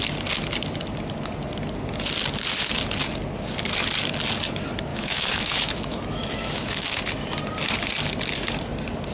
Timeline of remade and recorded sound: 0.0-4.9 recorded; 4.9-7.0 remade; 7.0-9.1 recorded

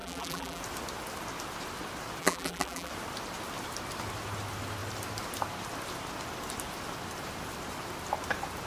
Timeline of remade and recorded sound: 0.0-0.6 remade; 0.6-2.2 recorded; 2.2-2.9 remade; 2.9-8.7 recorded

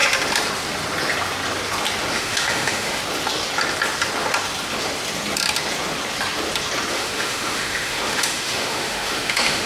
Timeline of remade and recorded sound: 0.0-2.1 recorded; 2.1-3.0 remade; 3.0-6.9 recorded; 6.9-9.7 remade

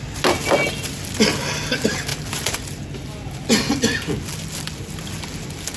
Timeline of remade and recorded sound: 0.0-5.8 recorded